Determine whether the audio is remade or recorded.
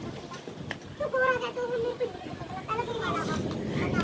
recorded